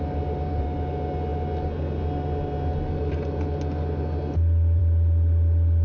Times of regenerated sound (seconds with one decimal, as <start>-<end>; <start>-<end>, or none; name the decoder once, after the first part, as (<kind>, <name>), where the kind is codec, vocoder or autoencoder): none